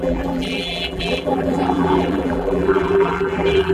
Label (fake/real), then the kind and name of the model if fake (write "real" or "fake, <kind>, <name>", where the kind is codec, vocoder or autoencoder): fake, vocoder, BigVGAN v2